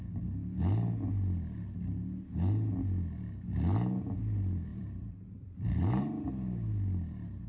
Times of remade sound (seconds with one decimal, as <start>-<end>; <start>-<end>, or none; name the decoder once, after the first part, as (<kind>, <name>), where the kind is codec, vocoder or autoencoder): 4.7-6.3 (vocoder, BigVGAN v2)